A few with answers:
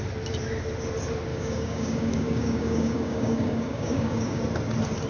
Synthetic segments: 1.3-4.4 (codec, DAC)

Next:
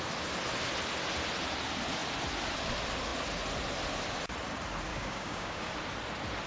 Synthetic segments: 4.9-5.7 (codec, DAC)

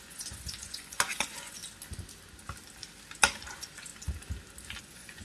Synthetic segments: 0.0-1.6 (vocoder, Vocos); 3.5-3.9; 4.8-5.2

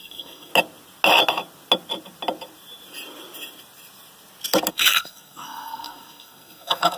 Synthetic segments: 0.0-0.5 (codec, SNAC); 4.7-7.0

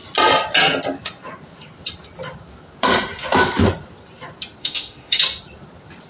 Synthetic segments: 4.6-5.2 (autoencoder, DAC-VAE)

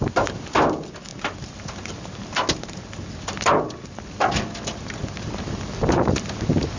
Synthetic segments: none

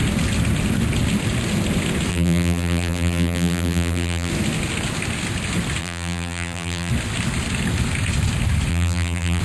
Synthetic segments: 2.1-4.3 (vocoder, BigVGAN v2); 5.8-6.9; 8.7-9.4